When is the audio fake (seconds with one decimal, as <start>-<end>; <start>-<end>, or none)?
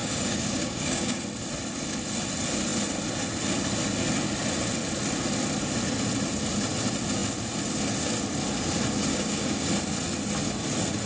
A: 0.0-1.2; 9.1-9.7